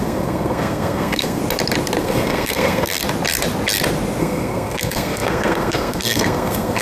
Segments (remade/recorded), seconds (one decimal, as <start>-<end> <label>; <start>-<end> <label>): 0.0-1.4 remade; 1.4-2.0 recorded; 2.0-3.0 remade; 3.0-4.2 recorded; 4.2-6.8 remade